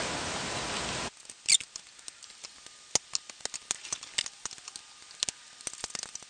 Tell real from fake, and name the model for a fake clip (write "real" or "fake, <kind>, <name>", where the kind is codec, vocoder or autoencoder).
real